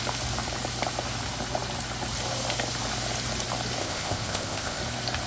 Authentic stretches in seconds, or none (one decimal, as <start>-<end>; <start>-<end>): 0.0-3.8; 4.8-5.3